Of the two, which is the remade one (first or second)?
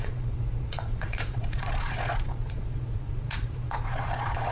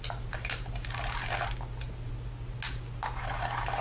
first